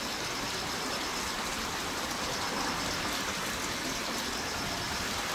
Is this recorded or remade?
remade